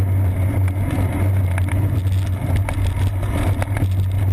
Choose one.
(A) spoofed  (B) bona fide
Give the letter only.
B